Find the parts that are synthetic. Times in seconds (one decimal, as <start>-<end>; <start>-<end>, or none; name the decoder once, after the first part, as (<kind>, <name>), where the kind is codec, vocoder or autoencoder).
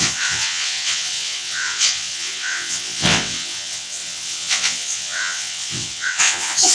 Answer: 0.0-6.7 (vocoder, WaveNeXt)